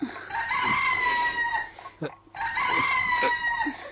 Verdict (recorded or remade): recorded